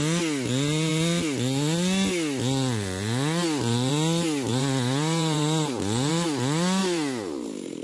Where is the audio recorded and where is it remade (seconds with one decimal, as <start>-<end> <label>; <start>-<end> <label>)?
0.0-4.5 recorded; 4.5-6.1 remade; 6.1-6.8 recorded; 6.8-7.8 remade